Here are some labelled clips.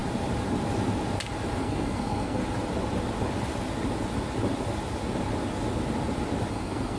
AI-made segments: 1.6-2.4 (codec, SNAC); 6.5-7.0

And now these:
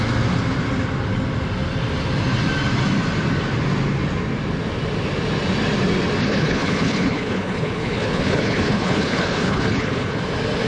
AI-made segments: 6.2-10.2 (codec, HILCodec)

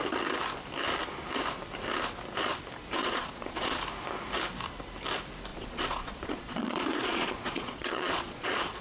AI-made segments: 3.0-3.8 (vocoder, Vocos); 5.5-8.8